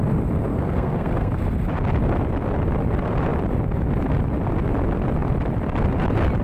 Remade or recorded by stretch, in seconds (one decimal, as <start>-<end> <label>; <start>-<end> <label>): 0.0-0.5 recorded; 0.5-1.4 remade; 1.4-6.4 recorded